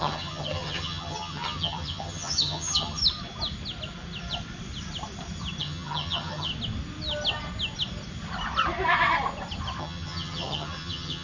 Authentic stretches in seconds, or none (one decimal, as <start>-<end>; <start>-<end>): 3.0-5.6; 6.5-9.8